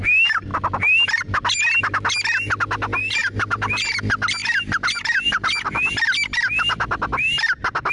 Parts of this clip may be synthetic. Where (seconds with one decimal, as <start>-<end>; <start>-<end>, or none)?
3.0-4.0; 4.4-5.9